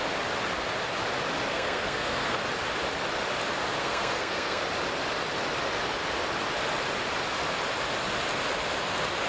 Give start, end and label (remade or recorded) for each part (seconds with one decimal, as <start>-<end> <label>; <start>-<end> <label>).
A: 0.0-1.5 recorded; 1.5-2.4 remade; 2.4-3.8 recorded; 3.8-4.6 remade; 4.6-9.3 recorded